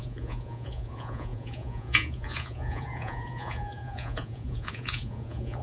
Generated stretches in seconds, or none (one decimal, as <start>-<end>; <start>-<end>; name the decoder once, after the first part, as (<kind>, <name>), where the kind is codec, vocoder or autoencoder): 0.0-5.6 (vocoder, Vocos)

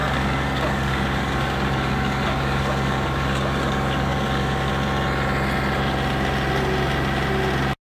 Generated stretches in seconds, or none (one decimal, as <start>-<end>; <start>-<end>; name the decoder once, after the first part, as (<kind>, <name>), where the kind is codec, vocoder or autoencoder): 0.0-4.7 (codec, DAC)

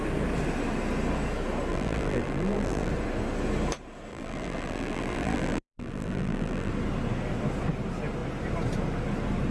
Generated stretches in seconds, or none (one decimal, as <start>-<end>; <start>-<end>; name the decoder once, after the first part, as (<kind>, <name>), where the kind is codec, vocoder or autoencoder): 1.7-2.9 (vocoder, BigVGAN v2); 4.1-6.7

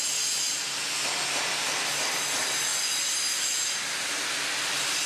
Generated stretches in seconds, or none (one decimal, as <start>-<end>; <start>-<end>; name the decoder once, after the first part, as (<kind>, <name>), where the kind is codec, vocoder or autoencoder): none

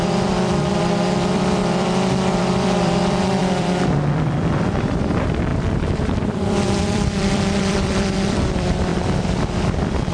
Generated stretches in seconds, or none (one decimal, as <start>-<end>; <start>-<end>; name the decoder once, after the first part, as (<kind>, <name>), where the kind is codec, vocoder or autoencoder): 0.0-10.1 (vocoder, BigVGAN v2)